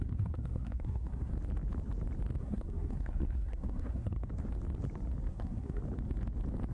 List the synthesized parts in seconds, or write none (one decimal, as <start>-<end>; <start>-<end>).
0.0-1.3; 2.4-4.3; 5.3-5.8